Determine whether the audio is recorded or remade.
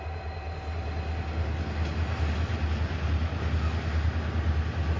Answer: recorded